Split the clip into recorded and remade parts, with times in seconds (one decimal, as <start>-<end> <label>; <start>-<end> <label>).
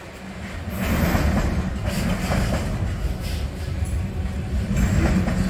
0.0-5.5 recorded